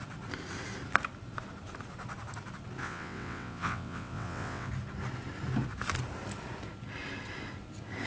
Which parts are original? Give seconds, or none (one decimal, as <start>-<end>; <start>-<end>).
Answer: 0.0-2.8; 4.7-8.1